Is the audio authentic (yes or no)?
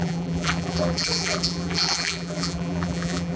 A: no